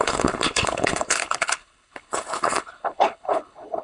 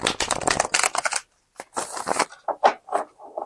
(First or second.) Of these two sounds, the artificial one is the first